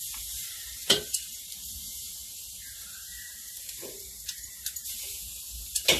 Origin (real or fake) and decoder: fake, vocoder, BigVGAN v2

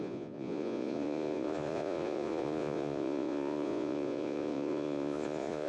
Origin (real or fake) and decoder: fake, vocoder, Vocos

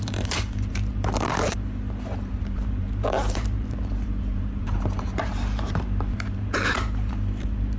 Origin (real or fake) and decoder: fake, vocoder, BigVGAN v2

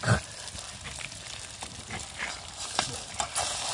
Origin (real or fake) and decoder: real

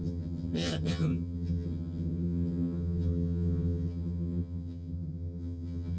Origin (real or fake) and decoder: fake, vocoder, HiFi-GAN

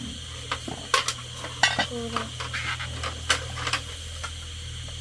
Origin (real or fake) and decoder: real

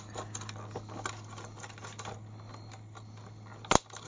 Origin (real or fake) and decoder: real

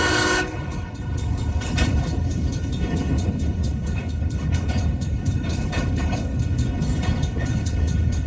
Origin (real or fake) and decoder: fake, codec, HILCodec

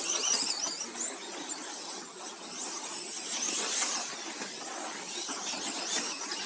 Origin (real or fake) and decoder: real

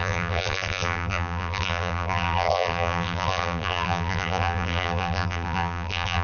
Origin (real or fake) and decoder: fake, vocoder, BigVGAN v2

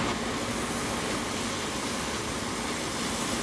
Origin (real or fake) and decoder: real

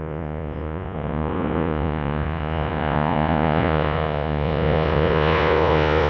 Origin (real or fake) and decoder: fake, vocoder, Vocos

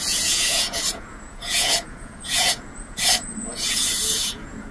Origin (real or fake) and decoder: fake, vocoder, Vocos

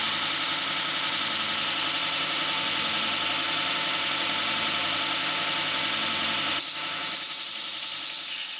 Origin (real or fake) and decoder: real